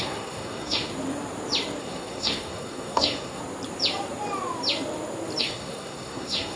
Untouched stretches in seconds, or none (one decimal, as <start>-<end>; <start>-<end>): 0.9-1.8; 3.4-5.4